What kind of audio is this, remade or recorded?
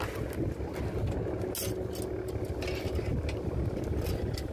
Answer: recorded